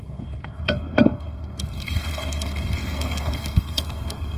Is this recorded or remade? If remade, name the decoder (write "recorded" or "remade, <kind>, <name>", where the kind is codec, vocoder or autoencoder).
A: remade, codec, SNAC